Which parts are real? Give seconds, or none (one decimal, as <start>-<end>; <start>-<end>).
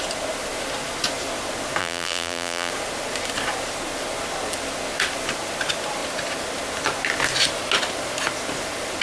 0.0-1.8; 2.7-9.0